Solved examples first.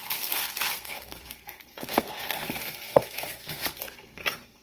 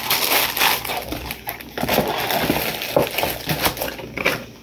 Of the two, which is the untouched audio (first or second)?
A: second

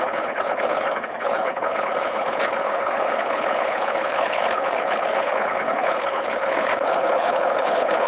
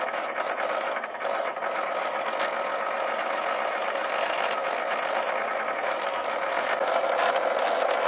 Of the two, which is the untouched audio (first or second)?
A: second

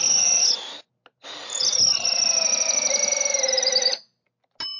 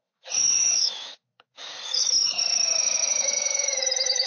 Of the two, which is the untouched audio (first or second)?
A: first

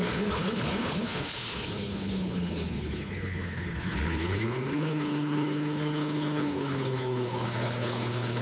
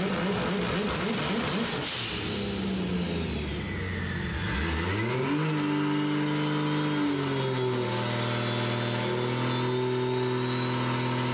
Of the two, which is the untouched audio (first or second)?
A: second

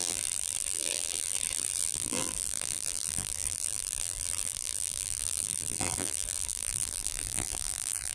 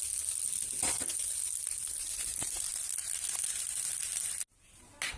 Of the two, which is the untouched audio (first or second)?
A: second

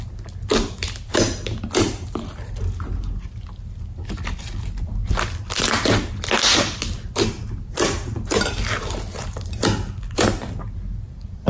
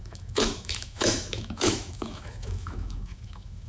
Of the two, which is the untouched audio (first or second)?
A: first